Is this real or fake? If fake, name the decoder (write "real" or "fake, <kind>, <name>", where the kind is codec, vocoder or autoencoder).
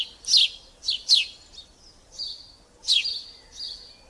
real